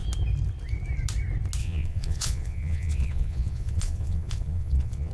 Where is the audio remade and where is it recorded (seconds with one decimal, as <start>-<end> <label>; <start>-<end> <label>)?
0.0-1.6 recorded; 1.6-5.1 remade